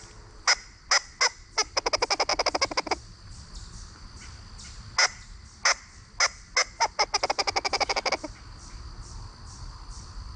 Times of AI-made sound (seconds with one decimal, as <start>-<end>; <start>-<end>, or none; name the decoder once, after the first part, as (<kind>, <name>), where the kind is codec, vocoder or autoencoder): none